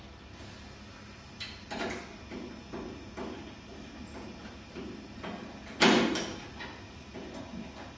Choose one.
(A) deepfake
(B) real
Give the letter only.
B